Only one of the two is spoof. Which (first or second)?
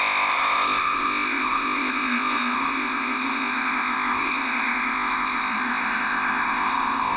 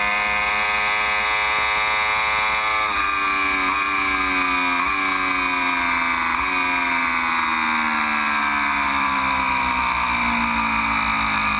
first